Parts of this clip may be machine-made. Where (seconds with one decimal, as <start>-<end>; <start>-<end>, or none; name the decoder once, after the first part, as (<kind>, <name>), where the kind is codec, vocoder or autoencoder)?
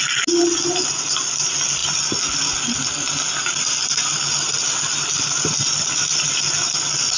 none